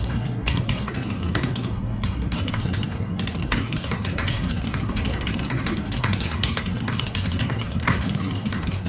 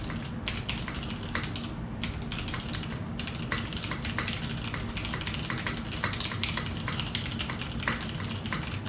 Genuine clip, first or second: second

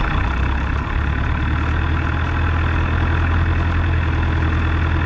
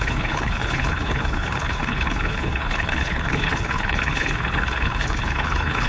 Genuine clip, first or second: first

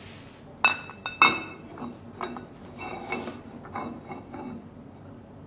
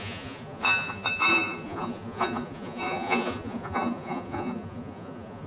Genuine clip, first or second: first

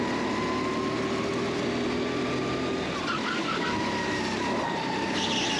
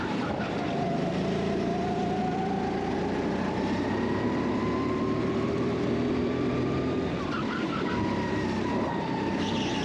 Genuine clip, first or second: first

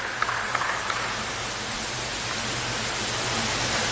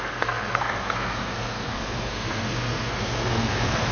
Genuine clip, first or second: first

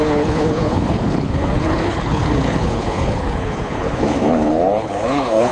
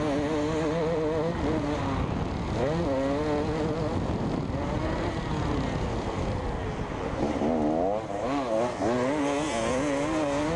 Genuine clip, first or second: second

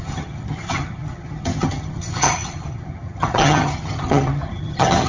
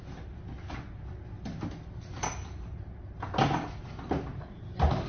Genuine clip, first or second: second